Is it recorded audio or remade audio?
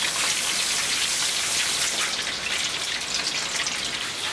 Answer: recorded